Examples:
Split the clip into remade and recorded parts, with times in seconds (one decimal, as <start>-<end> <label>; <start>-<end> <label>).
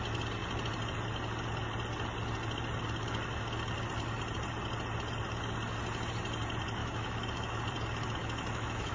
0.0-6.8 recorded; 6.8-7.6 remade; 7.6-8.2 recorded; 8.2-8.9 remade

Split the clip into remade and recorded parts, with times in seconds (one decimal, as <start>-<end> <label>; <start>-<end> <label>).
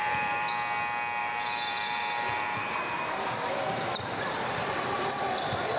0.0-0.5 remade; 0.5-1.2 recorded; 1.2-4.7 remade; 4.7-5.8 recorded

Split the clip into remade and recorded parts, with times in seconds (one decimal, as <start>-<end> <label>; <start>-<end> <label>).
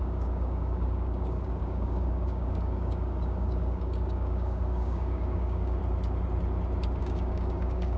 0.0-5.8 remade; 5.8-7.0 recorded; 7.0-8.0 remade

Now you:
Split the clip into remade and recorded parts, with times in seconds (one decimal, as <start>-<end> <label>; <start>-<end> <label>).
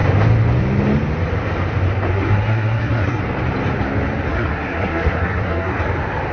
0.0-2.1 recorded; 2.1-3.2 remade; 3.2-4.3 recorded; 4.3-5.8 remade; 5.8-6.3 recorded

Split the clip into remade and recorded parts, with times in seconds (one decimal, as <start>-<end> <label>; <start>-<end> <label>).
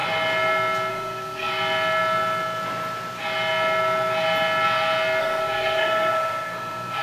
0.0-0.9 recorded; 0.9-1.5 remade; 1.5-5.2 recorded; 5.2-7.0 remade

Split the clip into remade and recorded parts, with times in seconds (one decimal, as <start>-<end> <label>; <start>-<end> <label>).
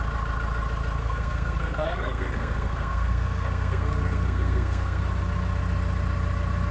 0.0-1.0 recorded; 1.0-5.0 remade; 5.0-6.7 recorded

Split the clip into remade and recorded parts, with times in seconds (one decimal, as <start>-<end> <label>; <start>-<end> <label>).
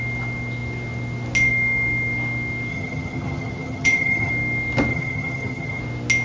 0.0-2.7 recorded; 2.7-4.3 remade; 4.3-4.9 recorded; 4.9-5.8 remade; 5.8-6.2 recorded